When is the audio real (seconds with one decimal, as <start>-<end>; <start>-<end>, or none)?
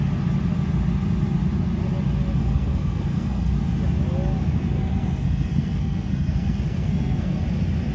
0.0-2.4; 3.5-4.4; 7.4-7.9